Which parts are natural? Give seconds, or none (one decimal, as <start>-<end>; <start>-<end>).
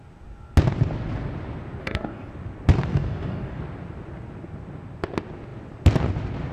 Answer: 0.0-1.8; 2.3-2.9; 3.6-6.5